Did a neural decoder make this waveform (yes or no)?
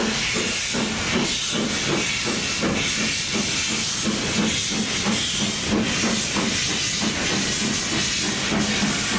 no